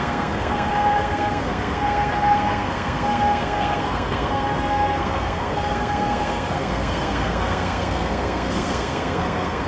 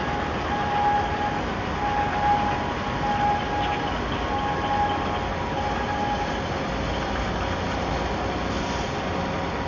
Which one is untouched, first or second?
second